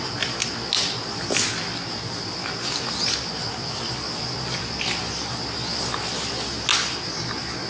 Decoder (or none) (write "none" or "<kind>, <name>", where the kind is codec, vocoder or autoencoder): none